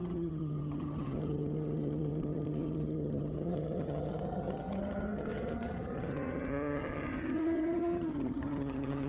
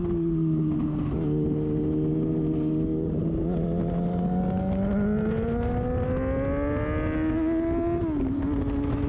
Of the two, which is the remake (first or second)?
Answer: first